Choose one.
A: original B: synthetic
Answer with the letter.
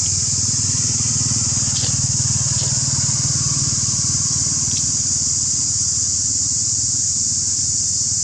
A